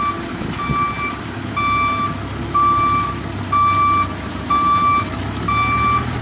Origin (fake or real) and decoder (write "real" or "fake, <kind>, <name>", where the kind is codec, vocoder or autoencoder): real